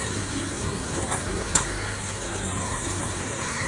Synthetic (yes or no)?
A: yes